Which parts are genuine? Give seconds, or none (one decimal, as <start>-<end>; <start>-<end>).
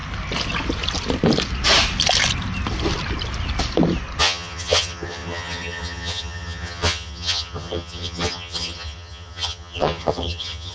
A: 0.0-4.2